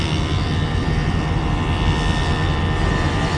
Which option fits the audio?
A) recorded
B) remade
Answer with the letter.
A